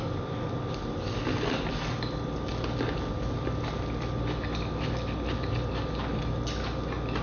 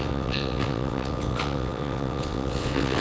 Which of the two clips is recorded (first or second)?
first